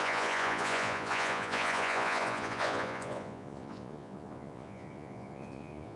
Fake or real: fake